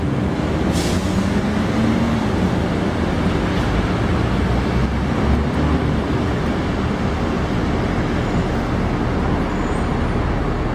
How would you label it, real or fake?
real